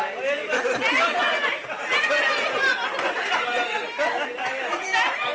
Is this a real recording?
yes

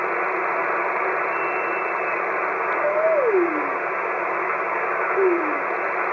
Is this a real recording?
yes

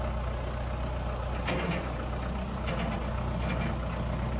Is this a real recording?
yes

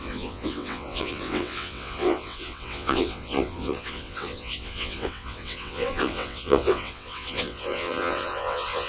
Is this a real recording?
no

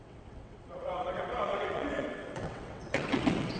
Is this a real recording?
no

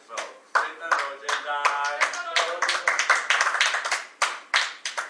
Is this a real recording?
yes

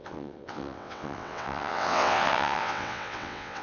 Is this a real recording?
no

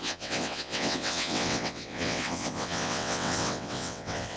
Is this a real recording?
no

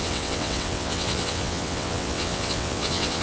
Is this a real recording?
no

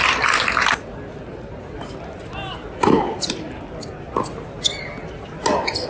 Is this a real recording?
yes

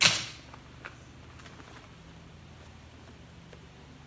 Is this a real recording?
yes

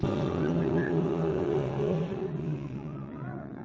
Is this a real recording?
no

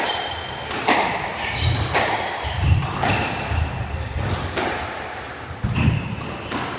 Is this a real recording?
yes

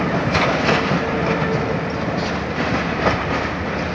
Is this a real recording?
yes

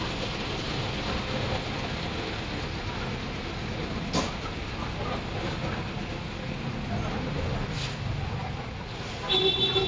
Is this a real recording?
yes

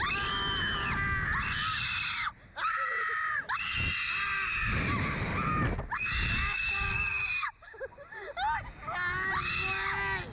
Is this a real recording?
yes